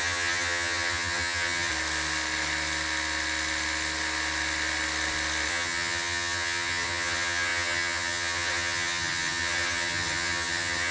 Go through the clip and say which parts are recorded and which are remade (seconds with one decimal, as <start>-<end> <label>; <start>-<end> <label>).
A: 0.0-1.7 remade; 1.7-5.5 recorded; 5.5-10.9 remade